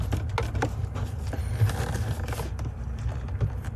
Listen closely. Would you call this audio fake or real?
real